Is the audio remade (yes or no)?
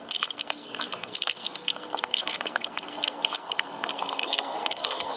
yes